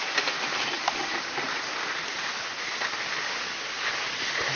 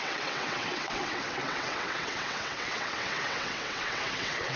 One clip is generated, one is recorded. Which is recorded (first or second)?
first